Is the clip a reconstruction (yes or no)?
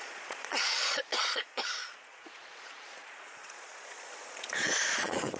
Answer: yes